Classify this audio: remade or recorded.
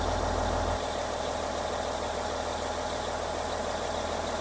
recorded